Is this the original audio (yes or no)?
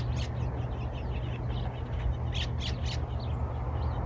yes